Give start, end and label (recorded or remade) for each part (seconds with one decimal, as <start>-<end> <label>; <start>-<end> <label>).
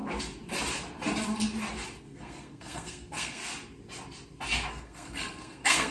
0.0-2.0 recorded; 2.0-3.4 remade; 3.4-4.7 recorded; 4.7-5.9 remade